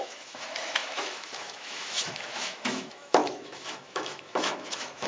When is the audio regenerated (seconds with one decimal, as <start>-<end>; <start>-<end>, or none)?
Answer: 0.0-5.1